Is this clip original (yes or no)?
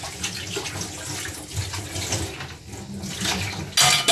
yes